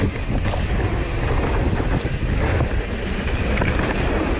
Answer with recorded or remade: recorded